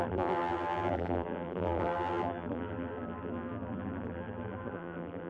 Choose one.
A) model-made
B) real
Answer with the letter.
A